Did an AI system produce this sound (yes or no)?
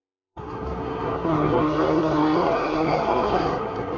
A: yes